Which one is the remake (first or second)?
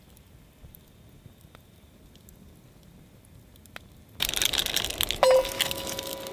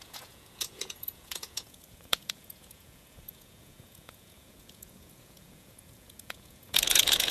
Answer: second